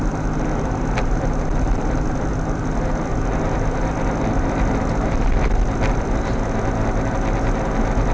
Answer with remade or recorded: recorded